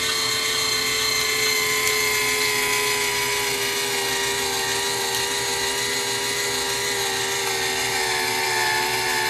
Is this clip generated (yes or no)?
no